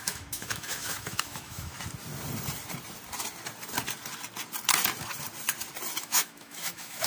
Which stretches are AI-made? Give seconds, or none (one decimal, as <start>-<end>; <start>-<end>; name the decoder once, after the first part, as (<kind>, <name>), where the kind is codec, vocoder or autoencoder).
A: 0.0-1.7 (autoencoder, DAC-VAE); 6.0-7.1